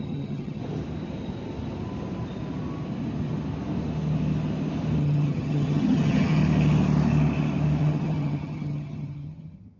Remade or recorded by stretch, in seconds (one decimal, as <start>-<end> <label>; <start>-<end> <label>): 0.0-0.6 remade; 0.6-5.0 recorded; 5.0-6.4 remade; 6.4-7.8 recorded; 7.8-9.8 remade